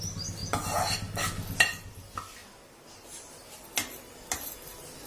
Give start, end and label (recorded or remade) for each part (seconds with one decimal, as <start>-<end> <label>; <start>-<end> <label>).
0.0-5.1 recorded